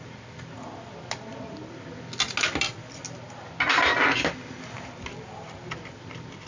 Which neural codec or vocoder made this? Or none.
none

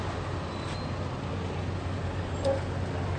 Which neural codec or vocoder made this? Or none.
none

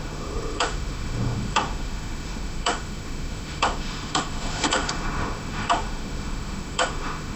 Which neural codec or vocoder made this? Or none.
autoencoder, DAC-VAE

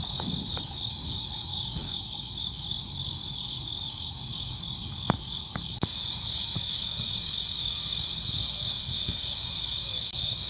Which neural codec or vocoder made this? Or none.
codec, DAC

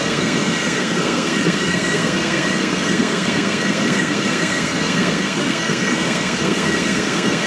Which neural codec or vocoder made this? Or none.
codec, SNAC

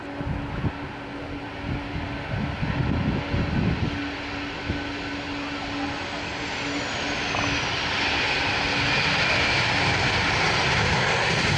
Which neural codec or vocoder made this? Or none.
none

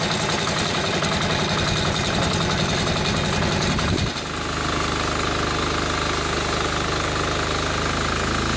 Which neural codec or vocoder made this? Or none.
none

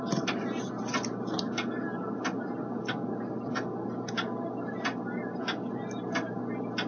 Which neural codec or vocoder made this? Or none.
none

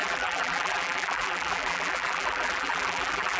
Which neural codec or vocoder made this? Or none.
vocoder, BigVGAN v2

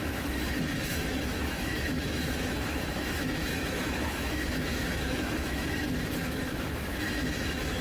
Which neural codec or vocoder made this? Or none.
autoencoder, DAC-VAE